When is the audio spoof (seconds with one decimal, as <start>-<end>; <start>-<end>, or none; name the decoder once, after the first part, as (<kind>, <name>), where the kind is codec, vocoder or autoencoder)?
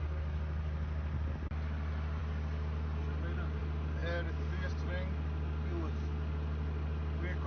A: none